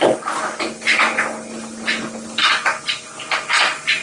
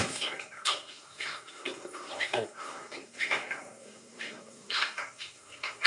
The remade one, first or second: second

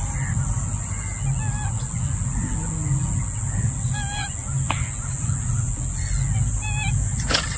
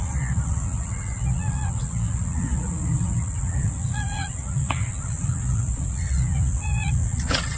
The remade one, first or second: second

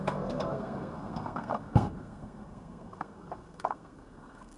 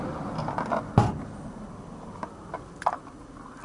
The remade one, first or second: first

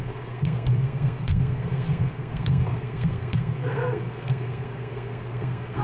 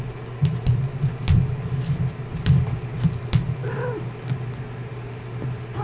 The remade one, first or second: first